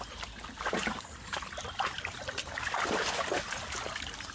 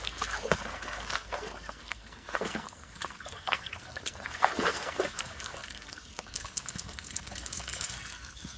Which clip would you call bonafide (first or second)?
first